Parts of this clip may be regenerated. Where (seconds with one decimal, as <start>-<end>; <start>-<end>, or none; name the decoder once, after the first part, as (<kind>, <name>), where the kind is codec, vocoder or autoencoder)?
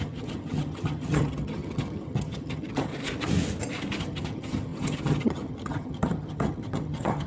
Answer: 0.0-2.9 (vocoder, HiFi-GAN); 4.0-7.3